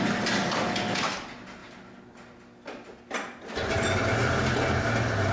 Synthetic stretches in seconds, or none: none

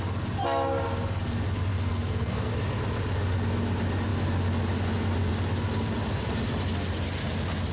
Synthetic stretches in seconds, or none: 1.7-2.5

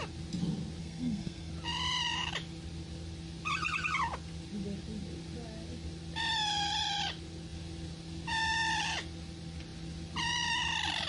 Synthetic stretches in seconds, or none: 0.8-1.5